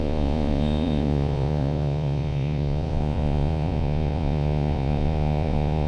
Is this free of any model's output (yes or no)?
no